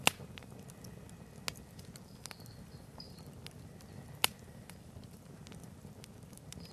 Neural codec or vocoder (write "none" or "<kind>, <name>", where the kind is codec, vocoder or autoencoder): none